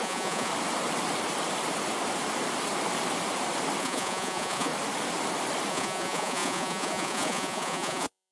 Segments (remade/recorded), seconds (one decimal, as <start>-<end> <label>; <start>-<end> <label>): 0.0-0.5 remade; 0.5-3.8 recorded; 3.8-4.7 remade; 4.7-5.7 recorded; 5.7-8.3 remade